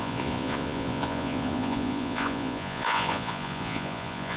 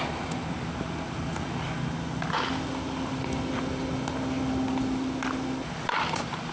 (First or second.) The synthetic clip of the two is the first